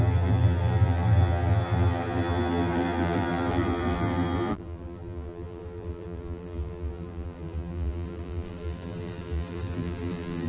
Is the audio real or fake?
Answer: fake